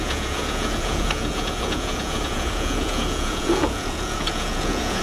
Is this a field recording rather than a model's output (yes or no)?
no